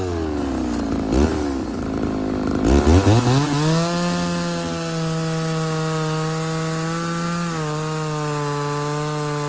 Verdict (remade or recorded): recorded